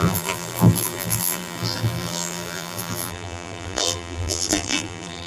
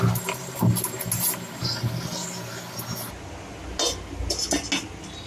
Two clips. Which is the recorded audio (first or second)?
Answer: second